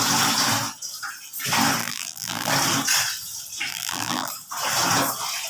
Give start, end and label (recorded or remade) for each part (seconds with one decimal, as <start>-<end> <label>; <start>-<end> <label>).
0.0-1.8 recorded; 1.8-2.5 remade; 2.5-3.7 recorded; 3.7-4.3 remade; 4.3-5.5 recorded